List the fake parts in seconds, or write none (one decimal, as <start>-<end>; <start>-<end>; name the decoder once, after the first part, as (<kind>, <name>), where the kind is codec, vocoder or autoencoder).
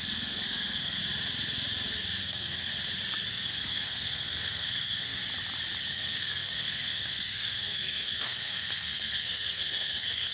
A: 0.0-1.0 (codec, SNAC); 2.2-2.7; 3.3-5.2; 5.9-10.3